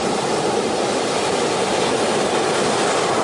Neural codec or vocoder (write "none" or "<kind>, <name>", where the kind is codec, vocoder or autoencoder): none